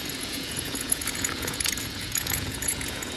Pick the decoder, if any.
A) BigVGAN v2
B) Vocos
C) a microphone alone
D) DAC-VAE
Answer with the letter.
B